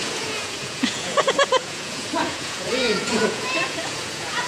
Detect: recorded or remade remade